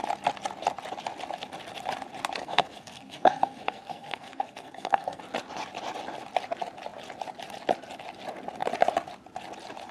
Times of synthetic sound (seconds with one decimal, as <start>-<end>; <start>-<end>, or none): 2.4-5.2